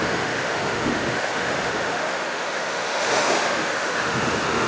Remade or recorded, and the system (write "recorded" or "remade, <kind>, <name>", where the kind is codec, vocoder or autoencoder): remade, autoencoder, DAC-VAE